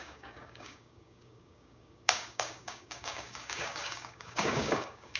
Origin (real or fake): fake